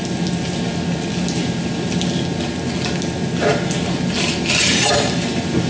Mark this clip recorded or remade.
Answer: recorded